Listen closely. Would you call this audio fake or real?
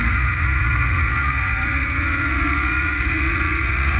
fake